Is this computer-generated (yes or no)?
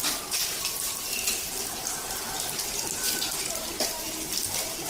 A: no